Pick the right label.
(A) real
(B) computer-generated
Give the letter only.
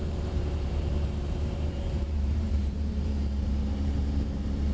B